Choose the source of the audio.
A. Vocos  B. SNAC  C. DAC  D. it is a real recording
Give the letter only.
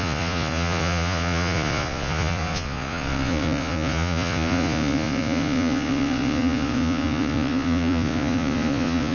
A